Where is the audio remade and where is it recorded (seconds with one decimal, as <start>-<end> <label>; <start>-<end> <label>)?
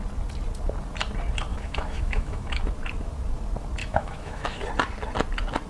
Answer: 0.0-1.5 recorded; 1.5-2.6 remade; 2.6-3.8 recorded; 3.8-4.6 remade; 4.6-5.7 recorded